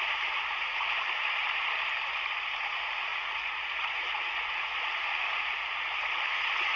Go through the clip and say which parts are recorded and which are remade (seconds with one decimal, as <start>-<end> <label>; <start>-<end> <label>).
0.0-3.1 recorded; 3.1-4.4 remade; 4.4-6.8 recorded

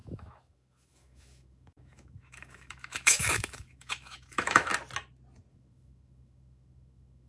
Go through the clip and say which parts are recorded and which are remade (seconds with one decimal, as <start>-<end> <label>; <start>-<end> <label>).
0.0-4.7 remade; 4.7-5.5 recorded; 5.5-7.3 remade

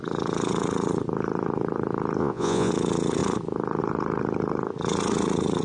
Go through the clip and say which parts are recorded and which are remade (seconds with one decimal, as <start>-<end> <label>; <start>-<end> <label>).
0.0-2.2 recorded; 2.2-2.7 remade; 2.7-5.6 recorded

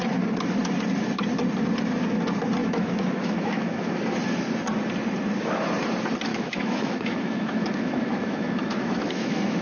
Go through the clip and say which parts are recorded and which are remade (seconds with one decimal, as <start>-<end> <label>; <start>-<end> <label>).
0.0-2.6 recorded; 2.6-4.0 remade; 4.0-6.3 recorded; 6.3-9.6 remade

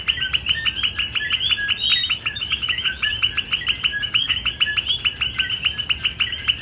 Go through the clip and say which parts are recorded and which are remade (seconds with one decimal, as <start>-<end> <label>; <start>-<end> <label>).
0.0-2.0 recorded; 2.0-3.3 remade; 3.3-3.9 recorded; 3.9-4.5 remade; 4.5-6.6 recorded

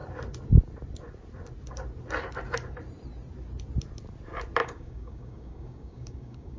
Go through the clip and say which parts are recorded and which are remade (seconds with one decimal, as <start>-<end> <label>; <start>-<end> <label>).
0.0-4.6 recorded; 4.6-6.6 remade

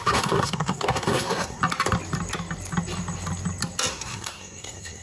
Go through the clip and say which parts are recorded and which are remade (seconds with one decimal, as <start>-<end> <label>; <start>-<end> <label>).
0.0-1.6 remade; 1.6-3.9 recorded; 3.9-5.0 remade